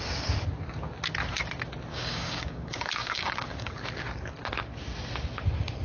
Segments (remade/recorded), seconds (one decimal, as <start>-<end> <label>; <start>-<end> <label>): 0.0-1.9 recorded; 1.9-3.7 remade; 3.7-5.8 recorded